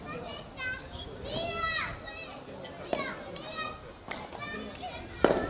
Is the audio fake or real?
real